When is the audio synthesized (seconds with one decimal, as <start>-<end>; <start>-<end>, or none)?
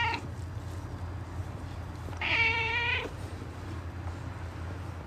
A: 1.4-3.8